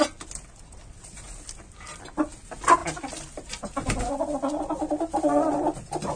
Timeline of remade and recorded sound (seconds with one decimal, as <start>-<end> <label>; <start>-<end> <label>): 0.0-6.2 recorded